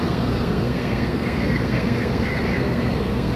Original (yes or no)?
no